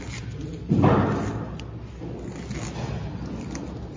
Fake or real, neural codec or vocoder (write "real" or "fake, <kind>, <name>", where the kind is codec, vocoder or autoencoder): real